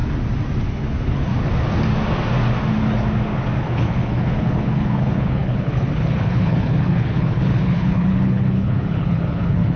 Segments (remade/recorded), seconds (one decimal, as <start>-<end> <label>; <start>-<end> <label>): 0.0-0.6 recorded; 0.6-1.3 remade; 1.3-3.6 recorded; 3.6-9.8 remade